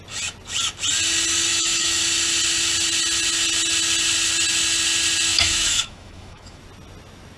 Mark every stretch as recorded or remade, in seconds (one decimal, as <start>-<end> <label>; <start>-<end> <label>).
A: 0.0-1.5 recorded; 1.5-2.0 remade; 2.0-5.3 recorded; 5.3-6.6 remade; 6.6-7.4 recorded